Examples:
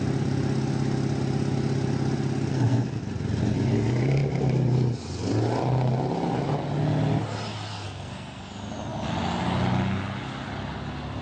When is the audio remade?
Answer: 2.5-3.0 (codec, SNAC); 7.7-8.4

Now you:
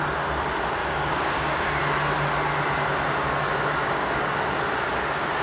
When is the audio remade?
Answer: 0.8-1.8 (codec, DAC); 3.8-4.6

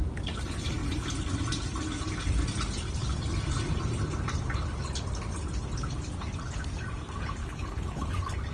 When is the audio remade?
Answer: 7.4-8.1 (codec, HILCodec)